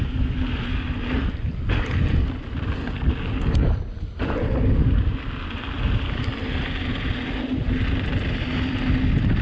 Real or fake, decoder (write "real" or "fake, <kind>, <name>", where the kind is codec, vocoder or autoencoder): real